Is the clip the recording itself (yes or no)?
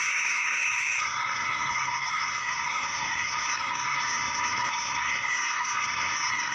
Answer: no